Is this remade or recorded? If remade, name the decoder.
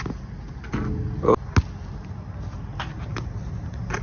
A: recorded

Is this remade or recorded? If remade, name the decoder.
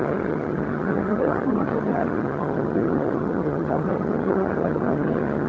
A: remade, vocoder, HiFi-GAN